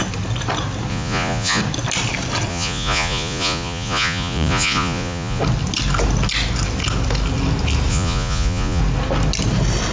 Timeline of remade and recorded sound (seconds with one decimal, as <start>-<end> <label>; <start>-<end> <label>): 0.0-0.9 recorded; 0.9-1.6 remade; 1.6-2.5 recorded; 2.5-5.4 remade; 5.4-7.9 recorded; 7.9-8.8 remade; 8.8-9.9 recorded